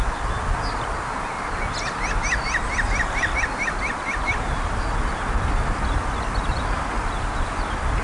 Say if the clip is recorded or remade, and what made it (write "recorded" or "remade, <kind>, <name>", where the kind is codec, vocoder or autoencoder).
recorded